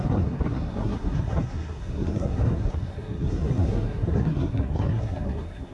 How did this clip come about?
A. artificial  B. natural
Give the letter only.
A